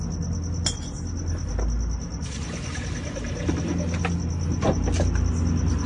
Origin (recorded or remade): recorded